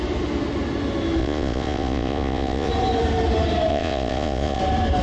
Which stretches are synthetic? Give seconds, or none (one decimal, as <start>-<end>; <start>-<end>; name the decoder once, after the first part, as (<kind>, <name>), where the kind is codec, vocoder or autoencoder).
1.2-2.7 (vocoder, Vocos); 3.7-4.6

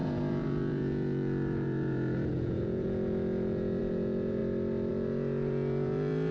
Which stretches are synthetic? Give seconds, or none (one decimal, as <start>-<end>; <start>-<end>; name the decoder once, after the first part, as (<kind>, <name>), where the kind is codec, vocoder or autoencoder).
0.0-4.4 (vocoder, Vocos); 4.9-6.3

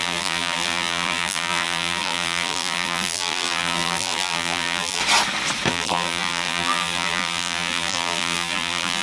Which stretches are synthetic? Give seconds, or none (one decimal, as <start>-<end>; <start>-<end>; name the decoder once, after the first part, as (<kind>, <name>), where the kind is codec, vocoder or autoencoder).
0.0-5.0 (vocoder, BigVGAN v2); 5.7-9.0

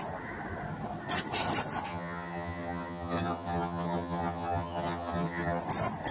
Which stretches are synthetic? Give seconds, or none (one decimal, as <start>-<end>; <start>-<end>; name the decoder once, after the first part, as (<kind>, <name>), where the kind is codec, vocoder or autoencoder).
1.9-5.6 (vocoder, HiFi-GAN)

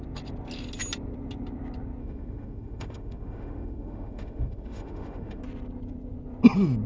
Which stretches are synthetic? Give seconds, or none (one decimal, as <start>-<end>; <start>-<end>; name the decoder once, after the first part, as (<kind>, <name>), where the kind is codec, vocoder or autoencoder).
2.0-5.4 (autoencoder, DAC-VAE)

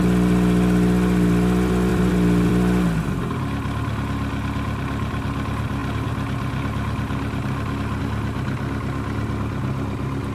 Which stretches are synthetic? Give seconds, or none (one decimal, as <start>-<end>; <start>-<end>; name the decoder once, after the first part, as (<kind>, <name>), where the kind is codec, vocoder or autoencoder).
none

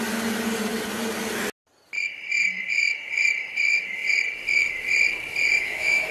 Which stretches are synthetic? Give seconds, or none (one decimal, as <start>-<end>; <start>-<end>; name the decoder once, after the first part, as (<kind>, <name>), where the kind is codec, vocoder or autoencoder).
5.5-6.1 (autoencoder, DAC-VAE)

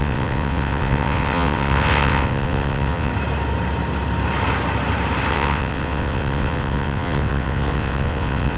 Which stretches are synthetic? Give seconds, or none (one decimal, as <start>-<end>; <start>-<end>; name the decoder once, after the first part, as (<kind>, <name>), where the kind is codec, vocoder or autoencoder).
0.0-3.1 (vocoder, WaveNeXt); 5.3-8.6